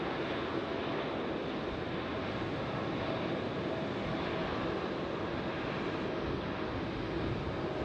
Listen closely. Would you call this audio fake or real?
real